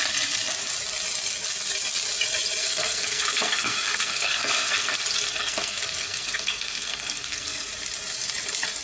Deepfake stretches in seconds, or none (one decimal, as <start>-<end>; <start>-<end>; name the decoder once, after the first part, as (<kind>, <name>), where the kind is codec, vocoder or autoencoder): 2.6-5.0 (codec, SNAC); 5.4-7.7